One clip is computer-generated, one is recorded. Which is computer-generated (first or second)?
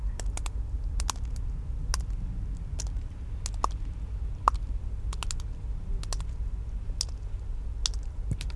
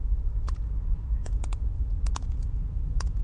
second